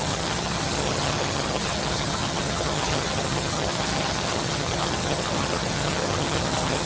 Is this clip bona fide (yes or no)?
no